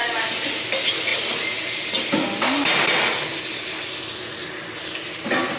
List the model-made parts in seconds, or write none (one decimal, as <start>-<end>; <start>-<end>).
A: none